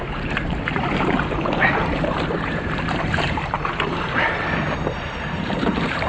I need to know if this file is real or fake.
fake